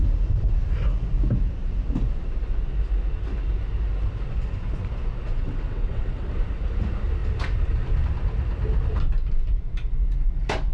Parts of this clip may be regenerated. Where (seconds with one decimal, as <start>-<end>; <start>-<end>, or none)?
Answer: 5.3-6.3